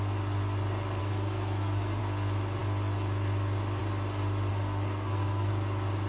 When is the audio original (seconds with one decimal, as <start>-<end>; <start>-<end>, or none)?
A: 0.0-1.0; 2.0-4.5; 5.5-6.1